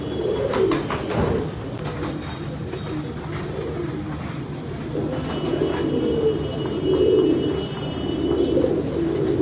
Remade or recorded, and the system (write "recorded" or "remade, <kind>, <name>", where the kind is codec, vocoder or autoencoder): recorded